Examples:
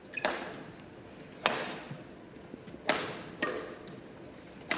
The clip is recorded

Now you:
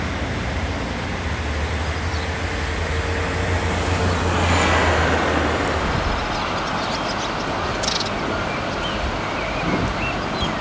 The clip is recorded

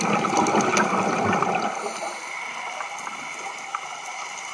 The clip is recorded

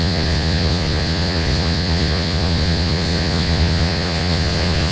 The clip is remade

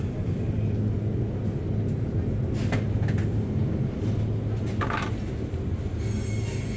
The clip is recorded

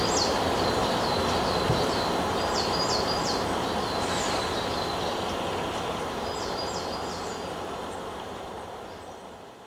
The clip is recorded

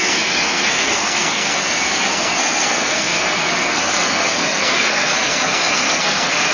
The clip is remade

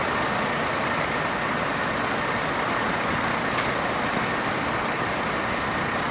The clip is recorded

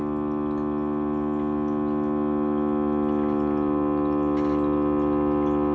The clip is recorded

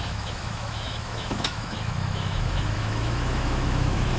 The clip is remade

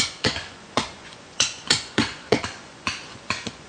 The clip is remade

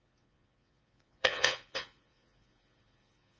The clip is remade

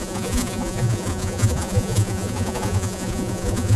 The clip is remade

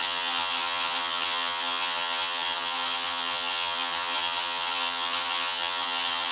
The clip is remade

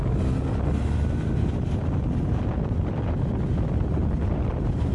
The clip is recorded